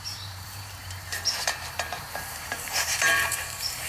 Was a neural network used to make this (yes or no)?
yes